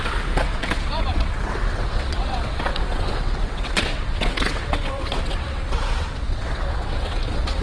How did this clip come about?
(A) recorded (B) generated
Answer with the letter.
B